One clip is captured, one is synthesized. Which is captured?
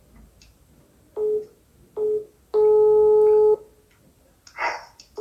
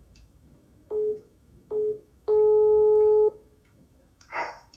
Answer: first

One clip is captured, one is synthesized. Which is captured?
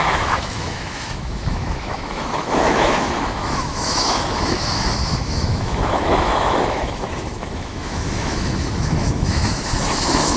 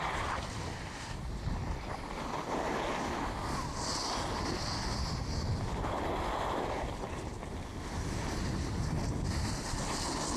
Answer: second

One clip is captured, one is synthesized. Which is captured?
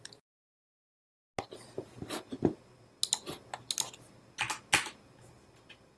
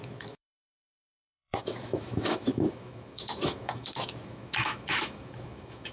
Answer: first